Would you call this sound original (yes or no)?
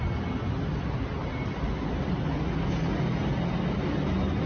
yes